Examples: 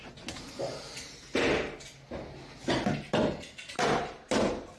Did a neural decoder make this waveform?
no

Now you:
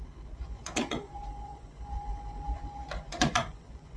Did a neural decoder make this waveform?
yes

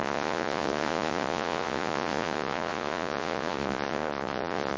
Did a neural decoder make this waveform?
yes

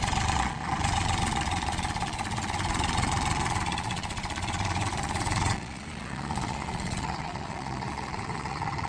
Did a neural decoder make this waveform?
yes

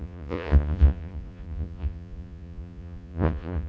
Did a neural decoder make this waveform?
yes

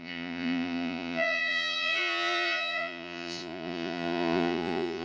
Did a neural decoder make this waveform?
yes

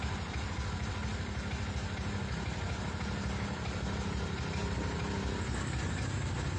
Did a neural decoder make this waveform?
no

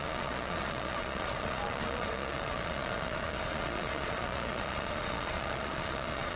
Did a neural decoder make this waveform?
yes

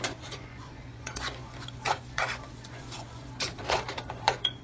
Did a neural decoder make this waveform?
yes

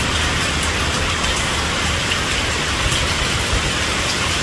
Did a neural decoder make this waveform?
no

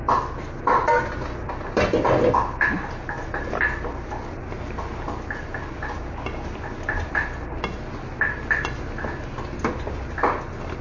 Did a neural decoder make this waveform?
no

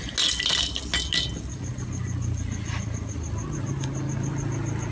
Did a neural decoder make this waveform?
no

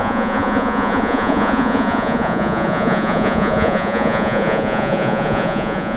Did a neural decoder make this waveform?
yes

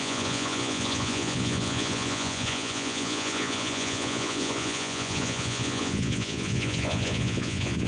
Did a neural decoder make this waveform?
yes